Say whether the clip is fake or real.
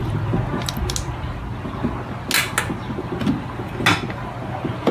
real